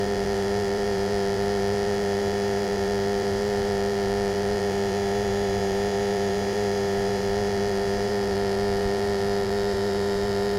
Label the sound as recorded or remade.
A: remade